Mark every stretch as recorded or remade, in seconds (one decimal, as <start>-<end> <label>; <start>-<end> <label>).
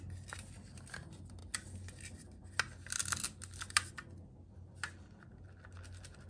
0.0-6.3 recorded